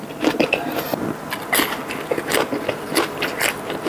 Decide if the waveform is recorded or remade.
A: recorded